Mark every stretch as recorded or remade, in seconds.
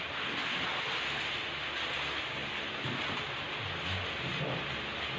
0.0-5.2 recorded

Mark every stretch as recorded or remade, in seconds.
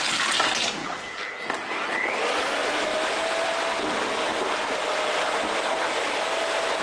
0.0-0.8 recorded; 0.8-1.3 remade; 1.3-4.3 recorded; 4.3-5.1 remade; 5.1-6.8 recorded